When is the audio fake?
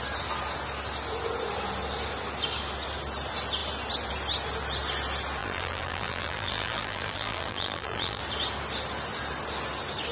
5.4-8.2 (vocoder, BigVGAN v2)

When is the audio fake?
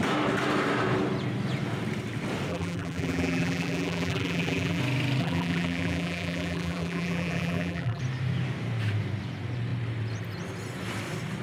2.5-4.8 (vocoder, BigVGAN v2); 5.2-8.0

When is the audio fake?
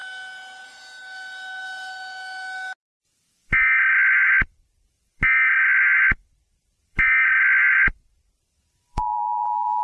2.8-9.8 (vocoder, BigVGAN v2)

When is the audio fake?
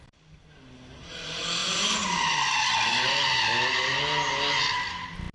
none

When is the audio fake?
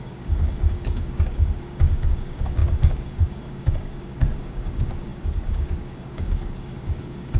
0.0-7.4 (codec, DAC)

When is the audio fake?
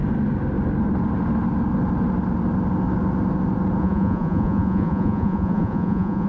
3.8-6.3 (vocoder, Vocos)